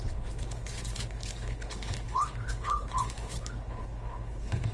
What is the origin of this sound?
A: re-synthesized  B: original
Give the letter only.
A